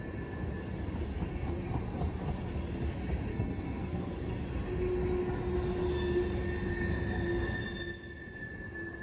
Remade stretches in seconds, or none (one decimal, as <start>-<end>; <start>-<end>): 3.3-4.3